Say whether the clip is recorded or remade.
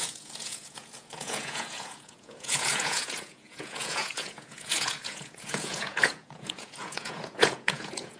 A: remade